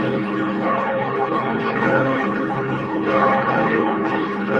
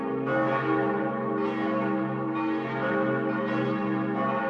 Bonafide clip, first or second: second